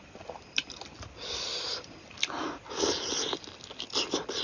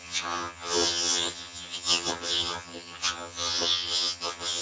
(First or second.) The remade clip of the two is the second